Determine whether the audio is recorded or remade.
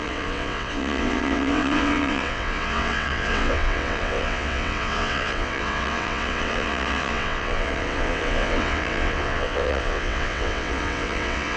remade